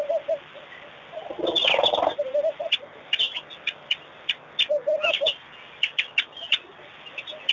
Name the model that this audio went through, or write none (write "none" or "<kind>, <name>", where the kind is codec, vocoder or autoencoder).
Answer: none